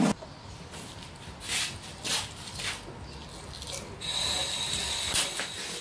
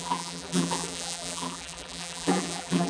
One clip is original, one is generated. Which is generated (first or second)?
second